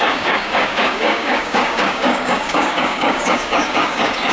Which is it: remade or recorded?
remade